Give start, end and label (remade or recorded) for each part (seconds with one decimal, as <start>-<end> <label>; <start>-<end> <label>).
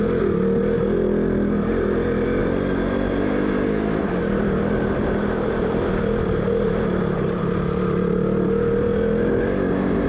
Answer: 0.0-2.4 recorded; 2.4-7.4 remade; 7.4-10.1 recorded